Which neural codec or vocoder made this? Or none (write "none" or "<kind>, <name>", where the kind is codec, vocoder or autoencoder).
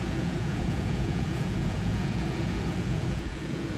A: vocoder, Vocos